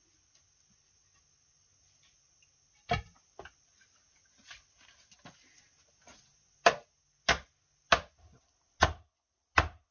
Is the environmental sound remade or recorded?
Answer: recorded